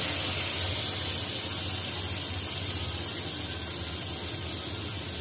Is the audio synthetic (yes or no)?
no